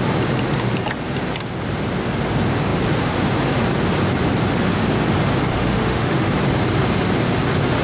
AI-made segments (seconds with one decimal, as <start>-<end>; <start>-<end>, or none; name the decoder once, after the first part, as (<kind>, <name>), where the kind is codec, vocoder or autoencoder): 5.5-6.3 (autoencoder, DAC-VAE)